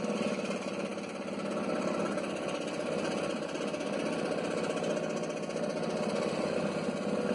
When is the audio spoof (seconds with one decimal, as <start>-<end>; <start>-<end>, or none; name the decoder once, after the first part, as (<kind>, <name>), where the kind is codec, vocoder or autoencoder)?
none